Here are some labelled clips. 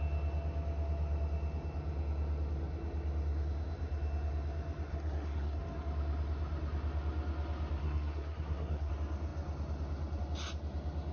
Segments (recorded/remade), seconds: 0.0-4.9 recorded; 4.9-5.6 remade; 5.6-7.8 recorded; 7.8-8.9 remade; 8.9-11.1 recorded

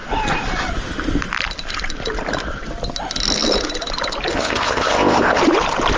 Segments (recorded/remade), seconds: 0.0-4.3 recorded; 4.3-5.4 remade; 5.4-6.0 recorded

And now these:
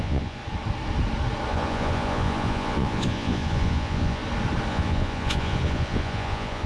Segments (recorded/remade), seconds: 0.0-0.4 remade; 0.4-1.5 recorded; 1.5-4.2 remade; 4.2-4.7 recorded; 4.7-6.7 remade

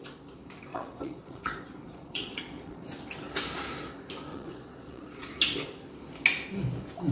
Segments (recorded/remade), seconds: 0.0-0.7 recorded; 0.7-2.9 remade; 2.9-4.3 recorded; 4.3-5.3 remade; 5.3-7.1 recorded

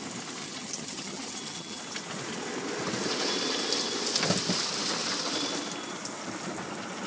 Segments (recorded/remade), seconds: 0.0-0.4 recorded; 0.4-1.8 remade; 1.8-7.1 recorded

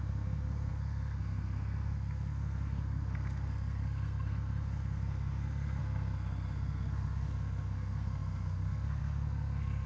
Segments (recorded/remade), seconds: 0.0-9.9 remade